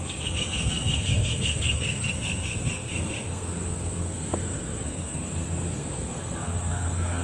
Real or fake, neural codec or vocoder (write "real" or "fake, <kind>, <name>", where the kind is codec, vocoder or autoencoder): fake, codec, SNAC